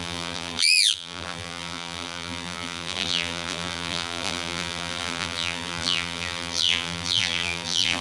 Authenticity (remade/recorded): remade